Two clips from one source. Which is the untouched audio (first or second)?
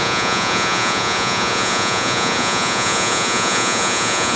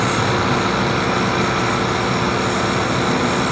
second